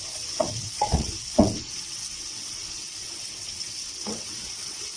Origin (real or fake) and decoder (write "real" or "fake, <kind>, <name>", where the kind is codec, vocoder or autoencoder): fake, vocoder, WaveNeXt